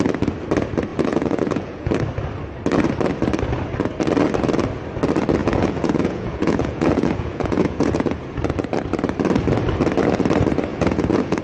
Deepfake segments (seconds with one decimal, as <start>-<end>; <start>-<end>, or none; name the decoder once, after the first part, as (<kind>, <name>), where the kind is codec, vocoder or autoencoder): 0.9-1.9 (vocoder, Vocos); 5.4-8.4; 10.7-11.4